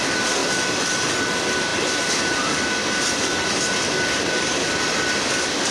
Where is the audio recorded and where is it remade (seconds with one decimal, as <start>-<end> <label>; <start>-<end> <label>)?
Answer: 0.0-5.7 recorded